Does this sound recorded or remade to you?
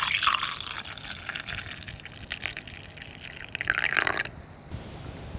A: recorded